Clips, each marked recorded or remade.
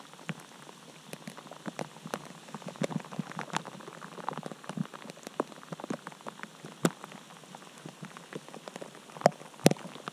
recorded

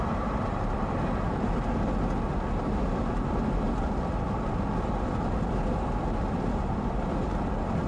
recorded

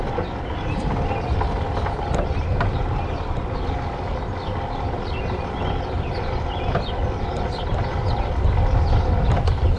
recorded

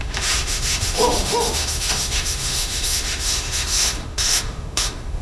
remade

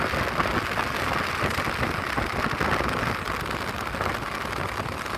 recorded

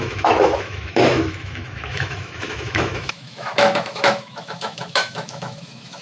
remade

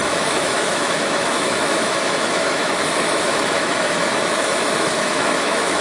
remade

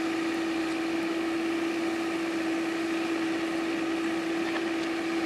recorded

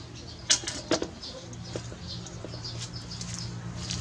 recorded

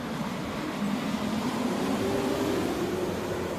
recorded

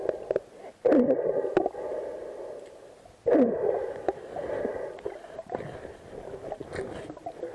recorded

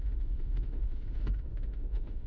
remade